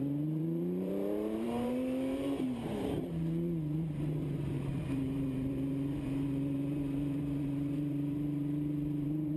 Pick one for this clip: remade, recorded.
remade